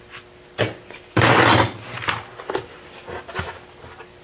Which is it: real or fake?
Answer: real